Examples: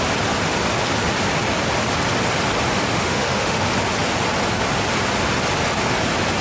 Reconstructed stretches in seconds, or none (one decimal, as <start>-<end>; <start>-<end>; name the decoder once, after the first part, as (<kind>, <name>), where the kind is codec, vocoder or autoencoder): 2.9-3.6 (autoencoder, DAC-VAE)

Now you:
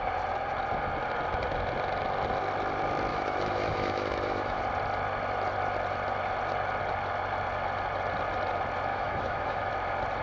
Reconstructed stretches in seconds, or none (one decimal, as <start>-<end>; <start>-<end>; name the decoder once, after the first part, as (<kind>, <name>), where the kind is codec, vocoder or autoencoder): 3.1-4.6 (autoencoder, DAC-VAE); 8.9-9.7

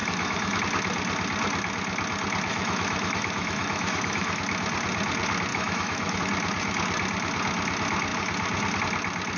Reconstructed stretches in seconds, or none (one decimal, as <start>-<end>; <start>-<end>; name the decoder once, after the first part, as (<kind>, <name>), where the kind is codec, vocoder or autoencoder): 0.0-0.6 (autoencoder, DAC-VAE); 2.5-4.4; 5.5-6.2

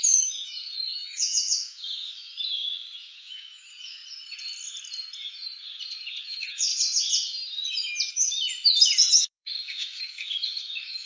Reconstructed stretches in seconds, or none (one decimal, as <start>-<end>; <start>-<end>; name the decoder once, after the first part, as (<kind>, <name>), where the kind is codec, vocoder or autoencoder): 0.0-4.0 (autoencoder, DAC-VAE); 6.2-6.7; 8.1-8.5; 9.1-11.1

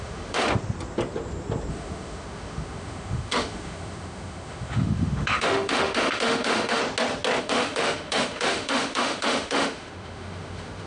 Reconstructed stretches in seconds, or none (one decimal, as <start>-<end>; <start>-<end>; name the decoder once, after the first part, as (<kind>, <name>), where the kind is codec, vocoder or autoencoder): 0.0-0.5 (autoencoder, DAC-VAE); 1.7-6.8; 7.4-10.9

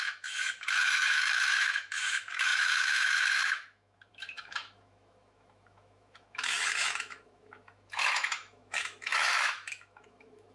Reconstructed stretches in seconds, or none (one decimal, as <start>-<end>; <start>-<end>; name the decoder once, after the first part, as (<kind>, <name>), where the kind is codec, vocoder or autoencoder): 0.0-10.5 (autoencoder, DAC-VAE)

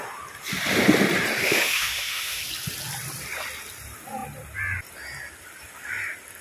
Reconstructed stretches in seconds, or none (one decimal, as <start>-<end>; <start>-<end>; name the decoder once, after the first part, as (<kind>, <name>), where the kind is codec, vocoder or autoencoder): 1.4-2.4 (autoencoder, DAC-VAE)

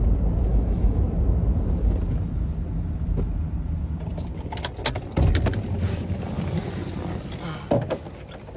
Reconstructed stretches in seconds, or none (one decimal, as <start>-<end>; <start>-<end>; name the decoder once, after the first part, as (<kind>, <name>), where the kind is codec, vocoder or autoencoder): 0.5-1.0 (autoencoder, DAC-VAE)